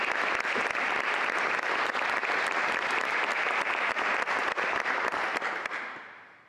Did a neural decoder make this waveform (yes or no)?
no